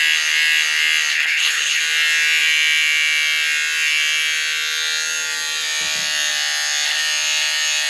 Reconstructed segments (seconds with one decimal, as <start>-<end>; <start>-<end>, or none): 1.1-1.8